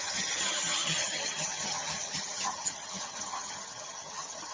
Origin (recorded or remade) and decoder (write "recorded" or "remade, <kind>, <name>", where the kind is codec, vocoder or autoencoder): remade, vocoder, HiFi-GAN